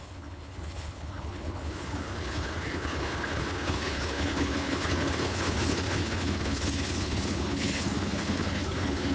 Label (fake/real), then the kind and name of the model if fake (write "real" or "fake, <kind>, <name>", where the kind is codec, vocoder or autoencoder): fake, codec, HILCodec